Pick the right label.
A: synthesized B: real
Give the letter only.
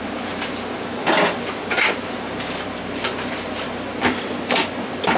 A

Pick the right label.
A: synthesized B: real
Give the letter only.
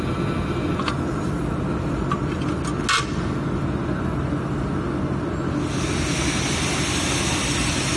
B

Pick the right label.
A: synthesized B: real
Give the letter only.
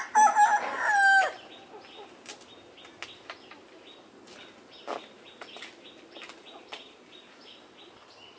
B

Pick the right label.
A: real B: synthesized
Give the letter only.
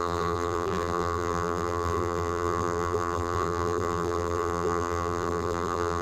B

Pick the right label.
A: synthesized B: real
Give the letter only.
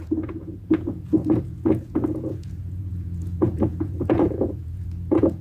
A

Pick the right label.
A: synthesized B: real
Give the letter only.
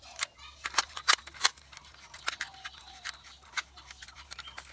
B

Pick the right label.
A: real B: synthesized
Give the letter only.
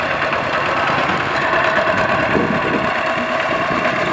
A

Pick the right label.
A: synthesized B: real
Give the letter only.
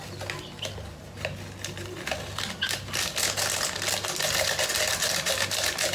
B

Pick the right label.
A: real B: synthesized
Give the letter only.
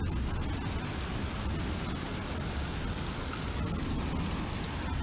A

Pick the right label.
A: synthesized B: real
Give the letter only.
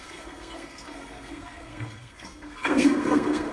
A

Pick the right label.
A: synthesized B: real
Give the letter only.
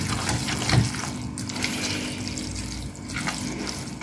B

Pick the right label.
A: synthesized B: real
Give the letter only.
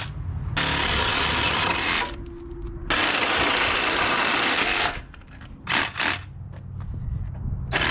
B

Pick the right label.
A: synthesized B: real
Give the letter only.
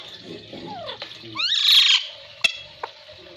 B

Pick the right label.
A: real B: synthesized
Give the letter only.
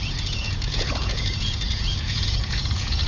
B